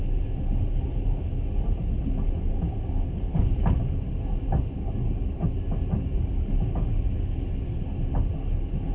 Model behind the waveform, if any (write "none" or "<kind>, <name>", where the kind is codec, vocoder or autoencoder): none